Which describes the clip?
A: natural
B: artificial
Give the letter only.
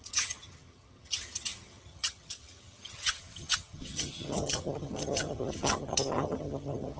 B